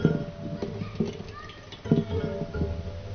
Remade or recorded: recorded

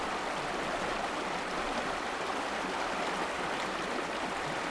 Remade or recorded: recorded